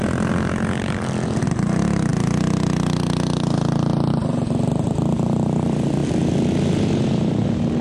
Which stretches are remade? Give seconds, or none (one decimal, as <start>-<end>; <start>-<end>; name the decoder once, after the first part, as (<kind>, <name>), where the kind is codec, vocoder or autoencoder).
none